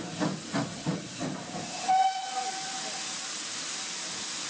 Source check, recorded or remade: recorded